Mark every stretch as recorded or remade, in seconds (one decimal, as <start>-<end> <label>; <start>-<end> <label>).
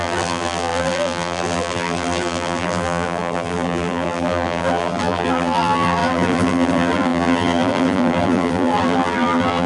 0.0-9.7 remade